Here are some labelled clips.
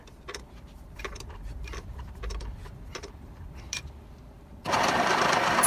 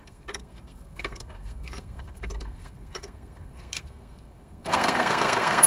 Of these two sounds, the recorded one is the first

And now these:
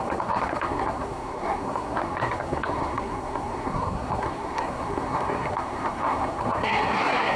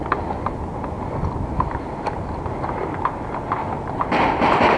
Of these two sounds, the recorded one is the second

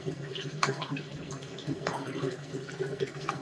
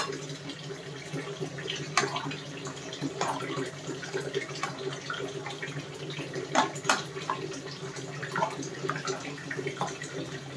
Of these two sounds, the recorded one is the second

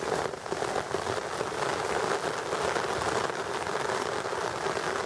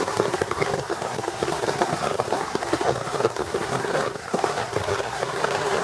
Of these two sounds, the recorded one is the first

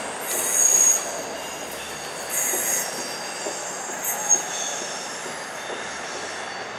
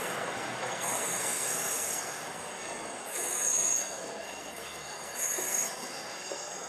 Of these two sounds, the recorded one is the first